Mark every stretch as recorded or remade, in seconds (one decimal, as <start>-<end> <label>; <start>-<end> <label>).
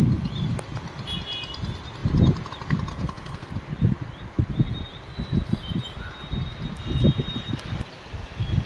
0.0-2.9 recorded; 2.9-3.5 remade; 3.5-8.7 recorded